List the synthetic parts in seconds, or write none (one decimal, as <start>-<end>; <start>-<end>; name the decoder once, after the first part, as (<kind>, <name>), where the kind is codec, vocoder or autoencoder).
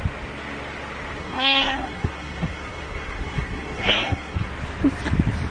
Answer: 1.2-4.5 (codec, SNAC)